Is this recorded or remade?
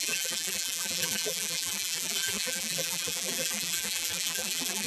remade